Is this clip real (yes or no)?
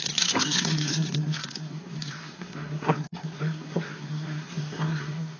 no